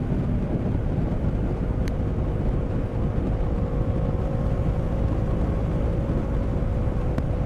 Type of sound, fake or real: real